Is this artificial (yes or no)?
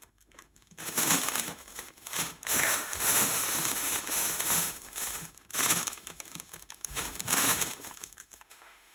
yes